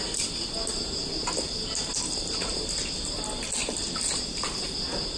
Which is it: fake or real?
real